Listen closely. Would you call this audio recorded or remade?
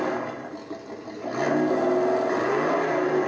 recorded